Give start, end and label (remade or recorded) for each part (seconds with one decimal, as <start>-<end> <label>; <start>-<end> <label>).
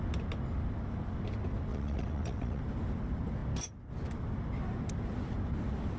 0.0-1.7 recorded; 1.7-2.6 remade; 2.6-6.0 recorded